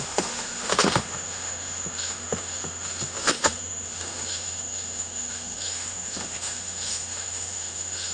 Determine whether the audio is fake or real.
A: fake